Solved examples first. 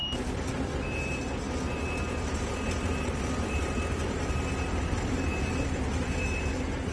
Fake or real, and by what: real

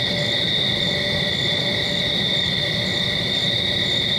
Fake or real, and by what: real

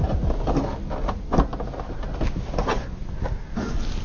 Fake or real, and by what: real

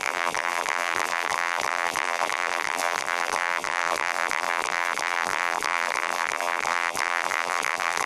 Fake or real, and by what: fake, vocoder, BigVGAN v2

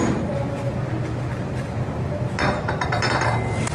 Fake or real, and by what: real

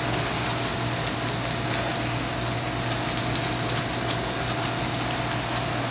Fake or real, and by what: real